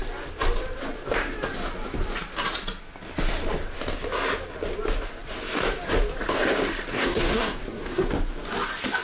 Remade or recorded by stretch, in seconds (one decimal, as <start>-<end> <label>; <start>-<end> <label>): 0.0-6.9 recorded; 6.9-8.1 remade; 8.1-9.0 recorded